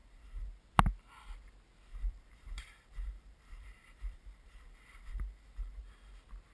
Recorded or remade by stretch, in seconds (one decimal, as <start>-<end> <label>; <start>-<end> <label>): 0.0-0.6 remade; 0.6-1.9 recorded; 1.9-5.8 remade; 5.8-6.5 recorded